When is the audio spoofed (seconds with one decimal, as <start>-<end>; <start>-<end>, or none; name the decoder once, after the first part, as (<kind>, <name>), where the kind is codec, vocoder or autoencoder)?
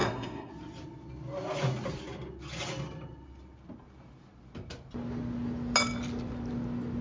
0.0-0.5 (codec, SNAC)